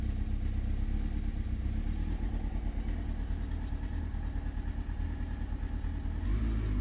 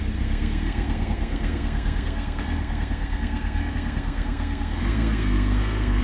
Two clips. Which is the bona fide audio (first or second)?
first